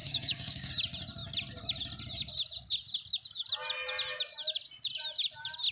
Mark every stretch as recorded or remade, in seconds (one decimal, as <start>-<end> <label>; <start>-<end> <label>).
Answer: 0.0-0.7 remade; 0.7-5.7 recorded